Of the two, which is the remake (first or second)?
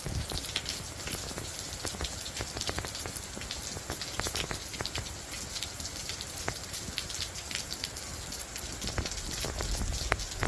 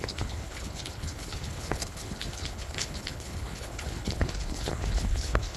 second